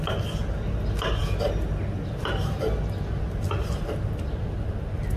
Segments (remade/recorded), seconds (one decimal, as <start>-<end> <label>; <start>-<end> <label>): 0.0-5.2 recorded